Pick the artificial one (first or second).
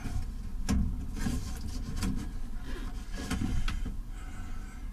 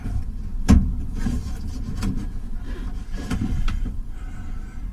second